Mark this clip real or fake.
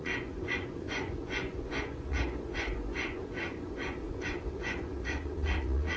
fake